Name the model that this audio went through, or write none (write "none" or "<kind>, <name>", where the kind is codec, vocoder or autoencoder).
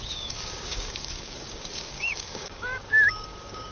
codec, DAC